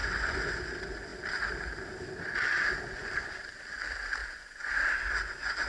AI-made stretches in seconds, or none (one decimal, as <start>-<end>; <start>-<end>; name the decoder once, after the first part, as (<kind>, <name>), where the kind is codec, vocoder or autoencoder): 0.0-0.7 (vocoder, Vocos); 2.3-3.4; 4.2-5.7